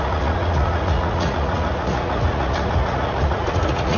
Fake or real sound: fake